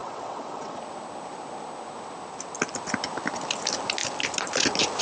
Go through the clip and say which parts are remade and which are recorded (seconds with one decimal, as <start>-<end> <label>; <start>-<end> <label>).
0.0-0.8 remade; 0.8-5.0 recorded